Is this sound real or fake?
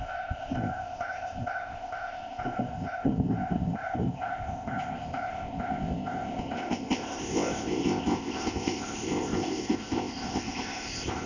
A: fake